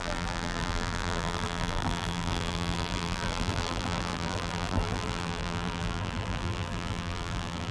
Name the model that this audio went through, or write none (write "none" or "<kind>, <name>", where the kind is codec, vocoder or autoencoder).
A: vocoder, BigVGAN v2